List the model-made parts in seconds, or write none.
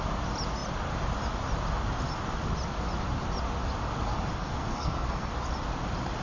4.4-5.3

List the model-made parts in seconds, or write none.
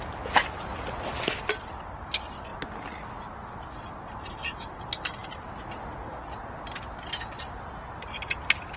none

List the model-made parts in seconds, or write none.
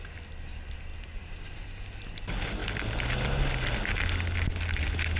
none